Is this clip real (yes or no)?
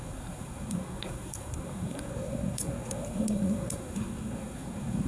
no